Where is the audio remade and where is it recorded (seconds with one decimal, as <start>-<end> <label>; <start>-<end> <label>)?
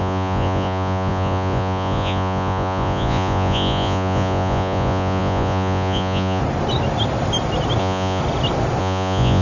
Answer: 0.0-6.4 remade; 6.4-7.8 recorded; 7.8-8.2 remade; 8.2-8.8 recorded; 8.8-9.4 remade